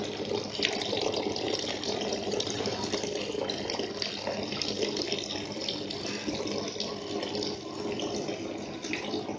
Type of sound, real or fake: real